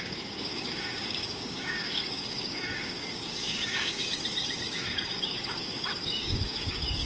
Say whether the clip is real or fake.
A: fake